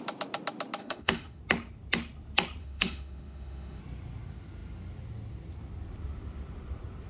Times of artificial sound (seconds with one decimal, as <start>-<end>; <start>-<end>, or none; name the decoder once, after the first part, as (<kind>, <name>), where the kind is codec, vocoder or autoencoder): 0.8-1.4 (autoencoder, DAC-VAE); 2.6-3.8